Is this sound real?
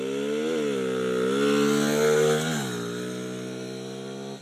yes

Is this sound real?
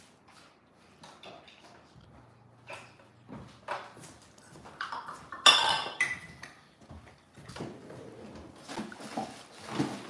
yes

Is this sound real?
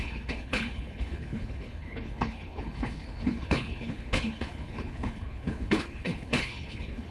no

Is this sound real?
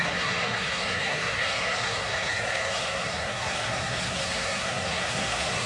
no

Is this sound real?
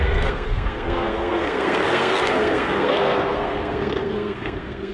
no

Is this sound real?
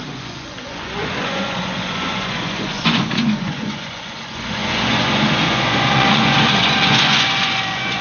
no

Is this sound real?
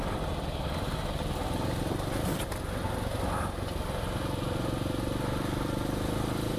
yes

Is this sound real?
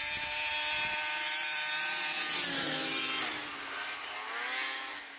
yes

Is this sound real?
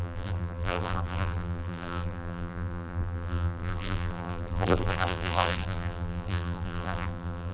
no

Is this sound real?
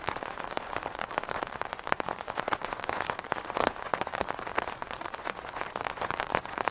no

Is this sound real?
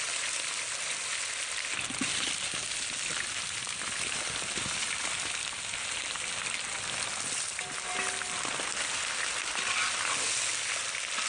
yes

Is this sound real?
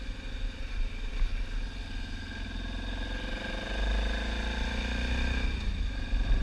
yes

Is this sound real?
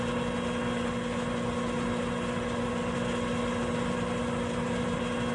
yes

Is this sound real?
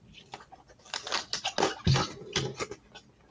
yes